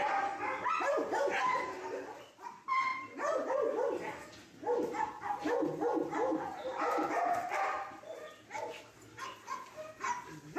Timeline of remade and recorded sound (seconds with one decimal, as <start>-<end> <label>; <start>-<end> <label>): 0.0-10.6 recorded